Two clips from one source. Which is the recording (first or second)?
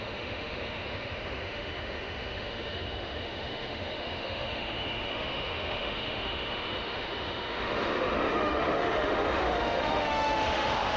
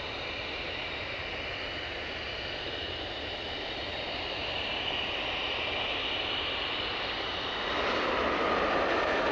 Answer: second